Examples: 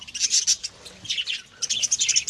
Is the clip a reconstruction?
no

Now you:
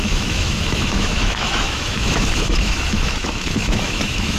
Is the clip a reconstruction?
yes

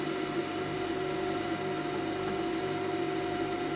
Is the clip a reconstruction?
no